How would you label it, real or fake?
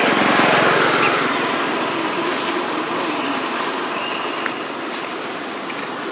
real